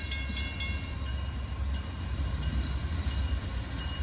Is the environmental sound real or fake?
real